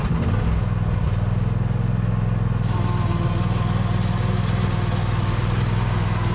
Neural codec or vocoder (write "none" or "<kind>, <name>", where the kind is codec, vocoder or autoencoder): none